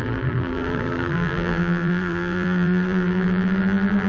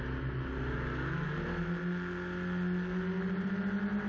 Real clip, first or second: second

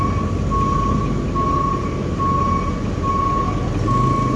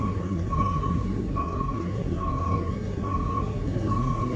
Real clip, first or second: first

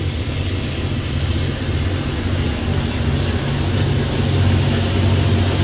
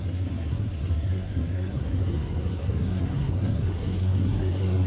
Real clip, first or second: first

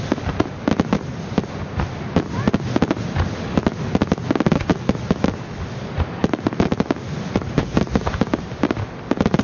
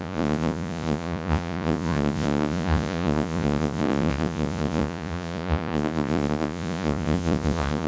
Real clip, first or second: first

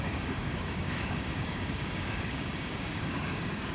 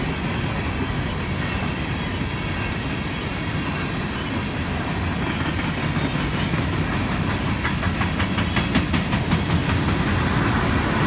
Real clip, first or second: second